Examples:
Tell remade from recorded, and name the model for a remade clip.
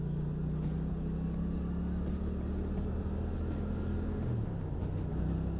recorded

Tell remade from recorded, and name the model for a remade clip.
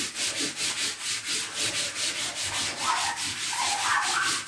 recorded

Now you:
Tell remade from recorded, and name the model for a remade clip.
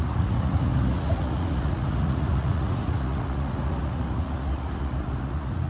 remade, vocoder, Vocos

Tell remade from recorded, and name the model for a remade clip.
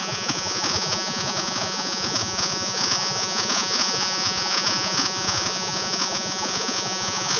remade, vocoder, Vocos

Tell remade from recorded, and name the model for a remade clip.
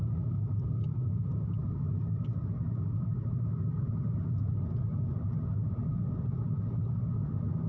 recorded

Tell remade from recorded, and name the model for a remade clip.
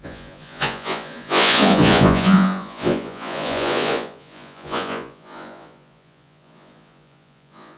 remade, vocoder, Vocos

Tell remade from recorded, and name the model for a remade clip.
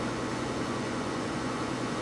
remade, vocoder, Vocos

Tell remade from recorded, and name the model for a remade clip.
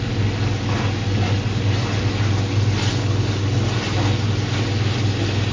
recorded